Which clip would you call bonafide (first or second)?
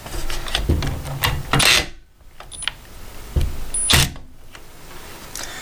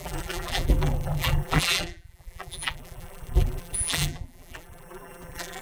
first